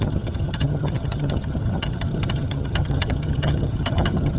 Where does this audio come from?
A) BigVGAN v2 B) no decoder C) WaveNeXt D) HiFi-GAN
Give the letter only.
D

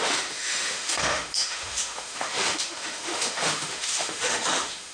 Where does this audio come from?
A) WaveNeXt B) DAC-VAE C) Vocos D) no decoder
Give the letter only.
B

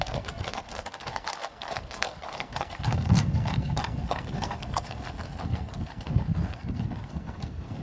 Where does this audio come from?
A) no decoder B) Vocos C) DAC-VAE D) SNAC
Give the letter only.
D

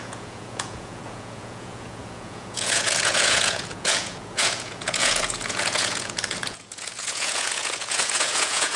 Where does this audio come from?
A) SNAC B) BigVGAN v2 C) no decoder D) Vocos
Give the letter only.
D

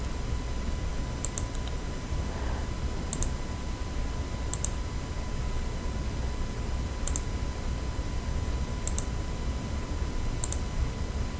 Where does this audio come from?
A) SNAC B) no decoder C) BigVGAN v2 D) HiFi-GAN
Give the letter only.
B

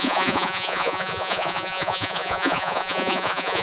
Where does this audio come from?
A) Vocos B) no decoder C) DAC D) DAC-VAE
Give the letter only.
A